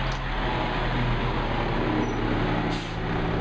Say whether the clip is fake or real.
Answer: real